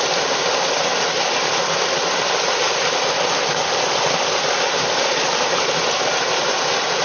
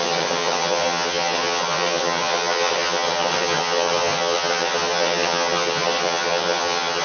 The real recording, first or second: first